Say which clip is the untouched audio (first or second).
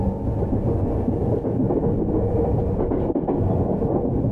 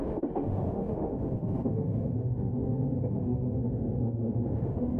first